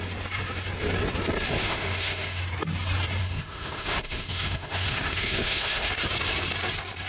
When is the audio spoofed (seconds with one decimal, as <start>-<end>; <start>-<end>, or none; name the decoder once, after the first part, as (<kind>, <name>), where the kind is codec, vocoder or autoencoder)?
1.6-2.4 (autoencoder, DAC-VAE); 3.2-5.9